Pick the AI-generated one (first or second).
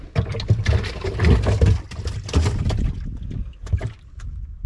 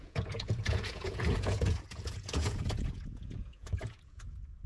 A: second